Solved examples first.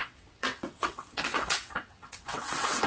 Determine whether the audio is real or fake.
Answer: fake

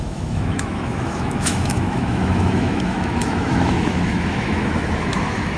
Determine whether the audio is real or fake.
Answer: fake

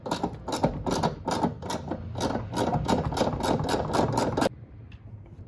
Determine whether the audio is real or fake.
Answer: real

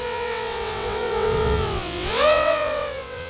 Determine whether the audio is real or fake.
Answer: fake